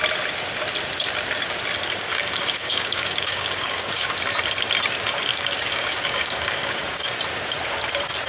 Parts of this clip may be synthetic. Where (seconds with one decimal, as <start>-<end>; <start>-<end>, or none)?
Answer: 2.1-4.1; 5.3-7.1